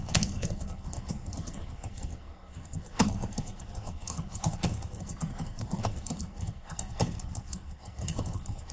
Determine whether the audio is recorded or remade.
remade